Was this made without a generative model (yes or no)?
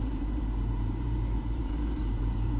no